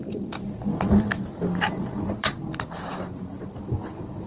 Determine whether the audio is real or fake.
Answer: fake